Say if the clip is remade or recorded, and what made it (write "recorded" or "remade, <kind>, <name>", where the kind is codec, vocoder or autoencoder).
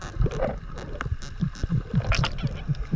recorded